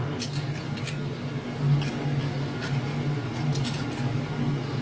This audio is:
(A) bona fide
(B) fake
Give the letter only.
A